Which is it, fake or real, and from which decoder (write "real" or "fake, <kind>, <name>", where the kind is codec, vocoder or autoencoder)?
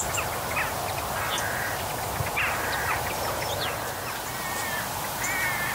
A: real